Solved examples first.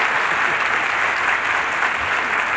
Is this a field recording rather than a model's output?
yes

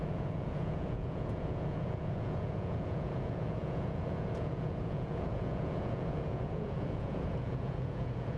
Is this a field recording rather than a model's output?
no